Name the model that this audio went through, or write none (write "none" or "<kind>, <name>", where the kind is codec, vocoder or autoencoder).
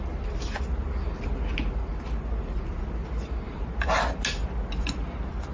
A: none